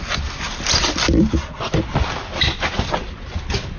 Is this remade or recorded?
recorded